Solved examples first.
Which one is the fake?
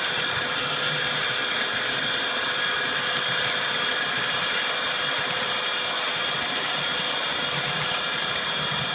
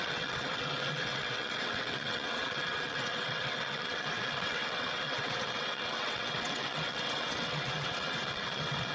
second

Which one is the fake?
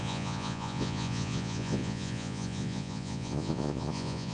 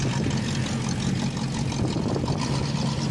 first